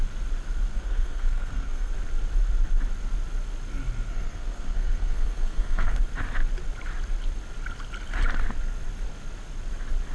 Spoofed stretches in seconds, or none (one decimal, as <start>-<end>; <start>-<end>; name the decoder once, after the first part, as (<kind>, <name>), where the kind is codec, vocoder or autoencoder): 0.7-1.9 (codec, SNAC); 4.1-6.0